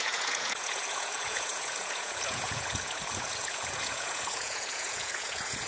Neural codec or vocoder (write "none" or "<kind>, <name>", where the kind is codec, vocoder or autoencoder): vocoder, Vocos